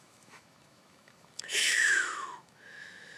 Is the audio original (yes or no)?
no